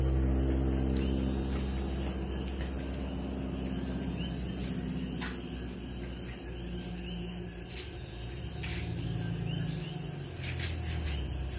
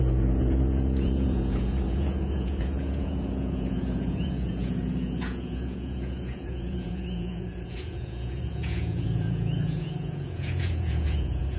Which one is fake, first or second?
second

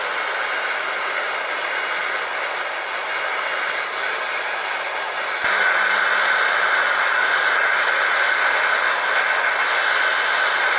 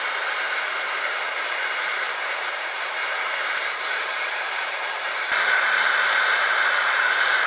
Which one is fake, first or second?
second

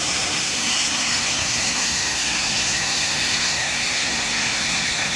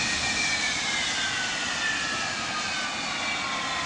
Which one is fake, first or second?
first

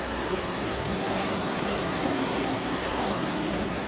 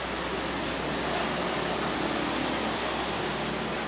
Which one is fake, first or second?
first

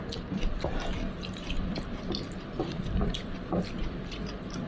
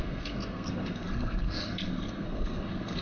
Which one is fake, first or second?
second